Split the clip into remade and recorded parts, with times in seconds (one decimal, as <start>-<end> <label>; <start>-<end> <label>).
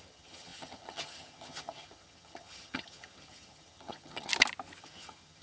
0.0-4.3 remade; 4.3-4.8 recorded; 4.8-5.4 remade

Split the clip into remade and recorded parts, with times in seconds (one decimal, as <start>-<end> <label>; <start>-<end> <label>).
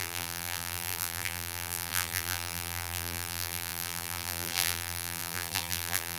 0.0-6.2 remade